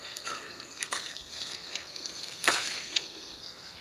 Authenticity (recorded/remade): remade